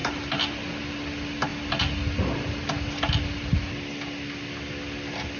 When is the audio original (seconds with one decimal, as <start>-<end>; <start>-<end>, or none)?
0.0-5.4